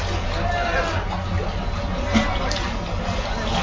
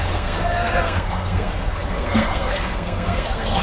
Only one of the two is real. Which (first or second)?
first